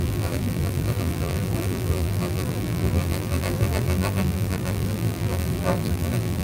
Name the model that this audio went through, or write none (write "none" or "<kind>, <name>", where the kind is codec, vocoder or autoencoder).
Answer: vocoder, BigVGAN v2